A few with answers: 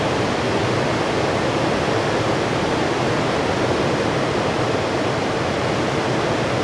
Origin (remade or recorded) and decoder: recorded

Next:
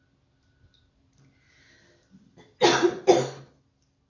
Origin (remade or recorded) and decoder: recorded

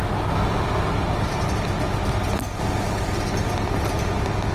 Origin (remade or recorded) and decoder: recorded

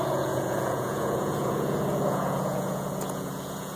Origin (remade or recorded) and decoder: remade, vocoder, Vocos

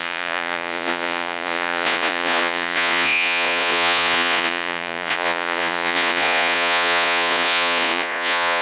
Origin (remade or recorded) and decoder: remade, vocoder, Vocos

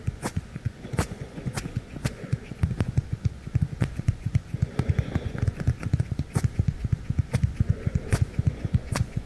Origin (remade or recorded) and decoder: remade, vocoder, Vocos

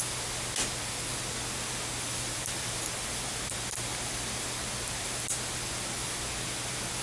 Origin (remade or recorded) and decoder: recorded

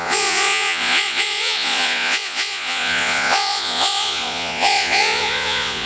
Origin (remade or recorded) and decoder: remade, vocoder, Vocos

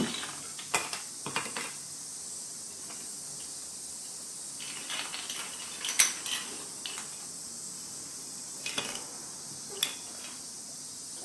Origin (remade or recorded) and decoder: recorded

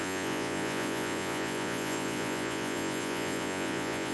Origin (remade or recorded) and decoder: remade, vocoder, Vocos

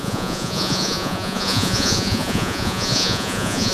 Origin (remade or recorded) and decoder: remade, vocoder, Vocos